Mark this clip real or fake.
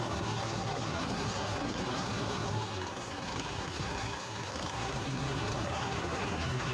fake